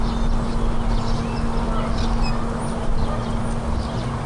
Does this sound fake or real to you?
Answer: real